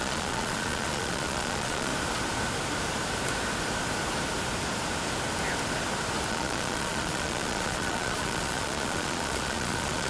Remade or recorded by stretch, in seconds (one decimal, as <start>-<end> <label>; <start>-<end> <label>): 0.0-1.9 remade; 1.9-6.3 recorded; 6.3-10.1 remade